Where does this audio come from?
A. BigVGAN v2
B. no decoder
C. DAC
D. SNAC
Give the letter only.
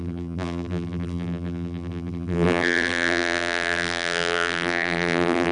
A